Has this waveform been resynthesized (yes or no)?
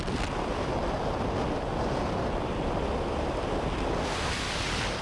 no